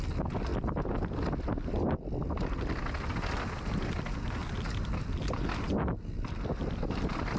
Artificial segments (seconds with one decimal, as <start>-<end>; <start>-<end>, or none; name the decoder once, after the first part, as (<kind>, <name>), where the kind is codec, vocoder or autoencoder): none

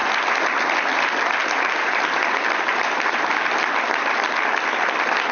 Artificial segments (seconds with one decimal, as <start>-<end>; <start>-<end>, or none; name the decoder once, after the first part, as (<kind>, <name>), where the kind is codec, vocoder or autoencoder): 1.4-2.0 (vocoder, BigVGAN v2); 2.7-3.3

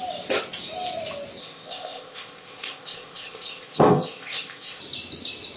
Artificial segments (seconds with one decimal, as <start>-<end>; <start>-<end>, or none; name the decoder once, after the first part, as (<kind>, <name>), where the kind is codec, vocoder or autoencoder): 1.4-4.8 (codec, ZipCodec)

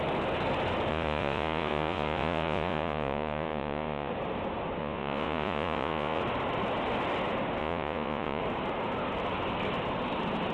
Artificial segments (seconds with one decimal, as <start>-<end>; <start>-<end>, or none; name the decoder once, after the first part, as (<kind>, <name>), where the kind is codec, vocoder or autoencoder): 0.9-4.1 (vocoder, Vocos); 4.8-6.2; 7.6-8.4

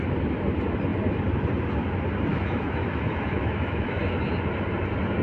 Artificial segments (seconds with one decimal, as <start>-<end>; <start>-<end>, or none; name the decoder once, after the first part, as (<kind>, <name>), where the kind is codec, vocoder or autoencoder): 2.3-4.0 (autoencoder, DAC-VAE)

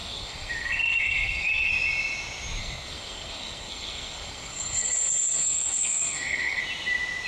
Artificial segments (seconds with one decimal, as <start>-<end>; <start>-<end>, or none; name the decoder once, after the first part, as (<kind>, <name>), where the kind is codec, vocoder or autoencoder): 0.0-1.7 (codec, SNAC); 2.6-6.6

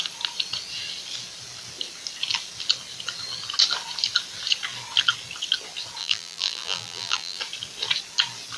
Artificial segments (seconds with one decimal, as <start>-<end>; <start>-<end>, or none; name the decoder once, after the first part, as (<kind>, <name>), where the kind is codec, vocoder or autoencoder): 6.0-7.4 (vocoder, BigVGAN v2)